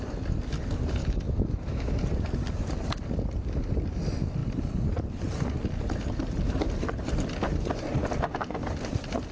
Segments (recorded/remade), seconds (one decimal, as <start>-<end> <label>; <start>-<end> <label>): 0.0-1.0 recorded; 1.0-2.0 remade; 2.0-9.3 recorded